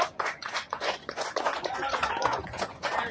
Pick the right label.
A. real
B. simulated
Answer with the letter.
B